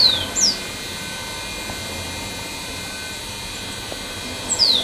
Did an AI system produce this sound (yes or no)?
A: no